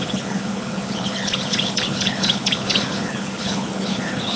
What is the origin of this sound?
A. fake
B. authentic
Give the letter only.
A